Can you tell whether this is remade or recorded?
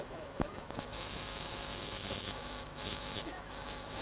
remade